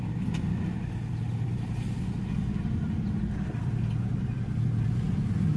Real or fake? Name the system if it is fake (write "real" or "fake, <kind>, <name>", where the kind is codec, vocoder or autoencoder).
real